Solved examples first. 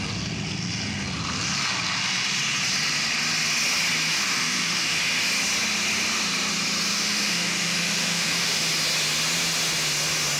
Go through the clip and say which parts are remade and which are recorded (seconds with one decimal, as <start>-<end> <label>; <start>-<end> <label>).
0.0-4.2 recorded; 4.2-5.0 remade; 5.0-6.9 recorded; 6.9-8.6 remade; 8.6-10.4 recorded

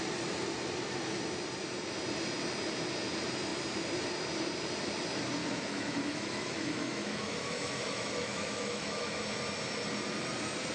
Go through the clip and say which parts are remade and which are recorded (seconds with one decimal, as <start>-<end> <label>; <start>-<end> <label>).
0.0-5.4 recorded; 5.4-9.2 remade; 9.2-10.7 recorded

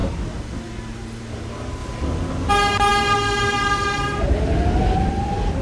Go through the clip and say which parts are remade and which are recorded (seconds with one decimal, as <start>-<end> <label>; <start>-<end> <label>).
0.0-5.6 recorded

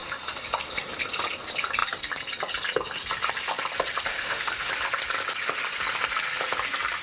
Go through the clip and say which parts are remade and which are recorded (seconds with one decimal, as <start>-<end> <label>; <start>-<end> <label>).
0.0-4.1 recorded; 4.1-4.7 remade; 4.7-7.0 recorded

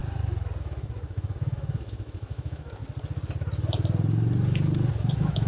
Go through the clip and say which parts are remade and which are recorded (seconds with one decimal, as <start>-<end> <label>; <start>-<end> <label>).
0.0-0.6 recorded; 0.6-2.8 remade; 2.8-4.9 recorded; 4.9-5.5 remade